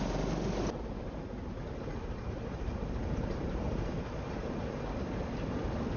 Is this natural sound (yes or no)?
yes